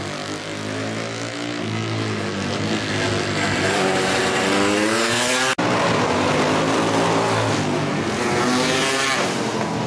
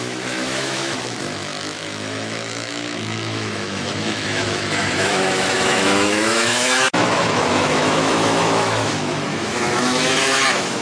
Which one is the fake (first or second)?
second